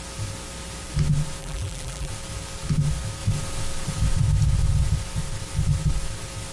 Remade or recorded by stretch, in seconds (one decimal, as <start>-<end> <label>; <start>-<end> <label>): 0.0-1.4 recorded; 1.4-2.1 remade; 2.1-6.5 recorded